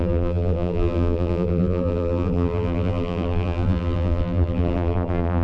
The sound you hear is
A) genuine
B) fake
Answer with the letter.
B